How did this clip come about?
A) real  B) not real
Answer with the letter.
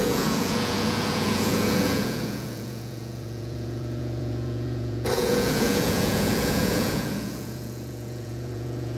B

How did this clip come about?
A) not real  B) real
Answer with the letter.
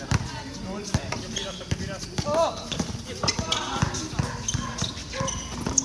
B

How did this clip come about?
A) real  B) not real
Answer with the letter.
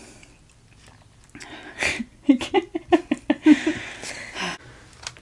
A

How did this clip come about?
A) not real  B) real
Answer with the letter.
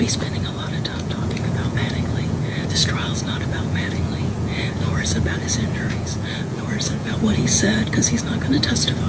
A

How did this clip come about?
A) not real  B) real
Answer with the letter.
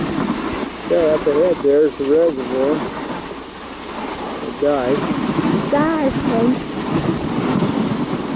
B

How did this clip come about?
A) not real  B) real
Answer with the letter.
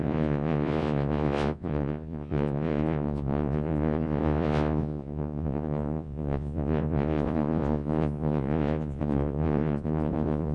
A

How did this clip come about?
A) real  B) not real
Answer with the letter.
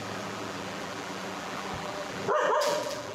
B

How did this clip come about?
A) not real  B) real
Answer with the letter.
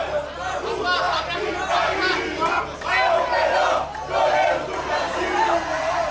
B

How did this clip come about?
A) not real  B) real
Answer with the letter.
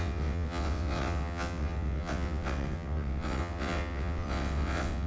A